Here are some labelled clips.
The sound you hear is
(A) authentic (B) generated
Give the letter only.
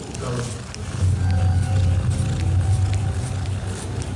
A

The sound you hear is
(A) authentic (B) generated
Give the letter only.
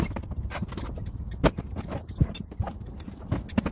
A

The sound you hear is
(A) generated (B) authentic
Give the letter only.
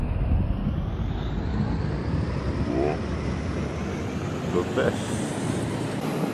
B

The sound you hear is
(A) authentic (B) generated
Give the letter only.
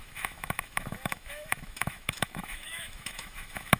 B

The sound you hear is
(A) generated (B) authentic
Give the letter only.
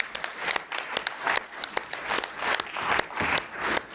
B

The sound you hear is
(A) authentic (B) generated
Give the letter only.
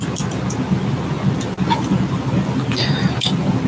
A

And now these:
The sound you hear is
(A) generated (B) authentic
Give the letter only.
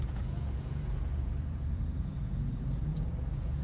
A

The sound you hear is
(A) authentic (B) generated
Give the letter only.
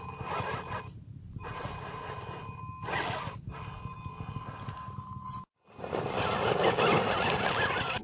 A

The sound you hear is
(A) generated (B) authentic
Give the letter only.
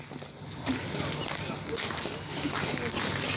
B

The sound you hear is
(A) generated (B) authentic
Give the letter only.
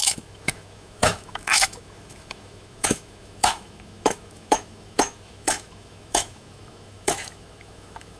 A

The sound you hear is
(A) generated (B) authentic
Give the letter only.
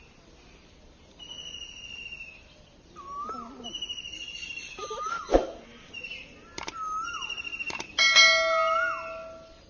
B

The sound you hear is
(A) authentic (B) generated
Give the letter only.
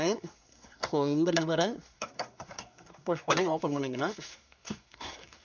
B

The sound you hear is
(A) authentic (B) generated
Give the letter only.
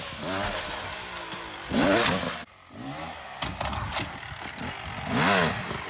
A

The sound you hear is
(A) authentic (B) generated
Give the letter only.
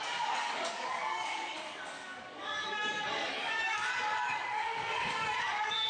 B